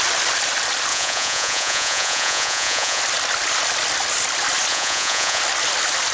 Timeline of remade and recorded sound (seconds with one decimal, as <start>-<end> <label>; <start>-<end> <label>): 0.0-0.9 recorded; 0.9-3.0 remade; 3.0-4.7 recorded; 4.7-5.4 remade; 5.4-6.1 recorded